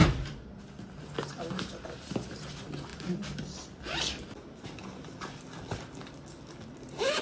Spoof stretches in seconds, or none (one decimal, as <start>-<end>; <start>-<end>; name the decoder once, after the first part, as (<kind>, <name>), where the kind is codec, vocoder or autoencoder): none